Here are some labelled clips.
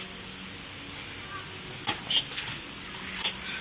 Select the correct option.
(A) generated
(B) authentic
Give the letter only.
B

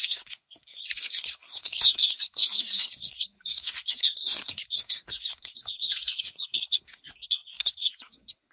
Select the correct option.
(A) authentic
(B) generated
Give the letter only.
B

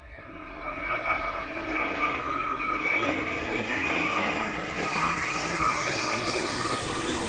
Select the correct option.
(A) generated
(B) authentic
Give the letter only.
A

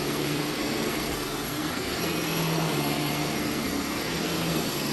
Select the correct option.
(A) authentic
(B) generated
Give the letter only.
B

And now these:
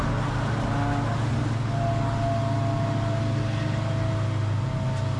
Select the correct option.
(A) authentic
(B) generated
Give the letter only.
A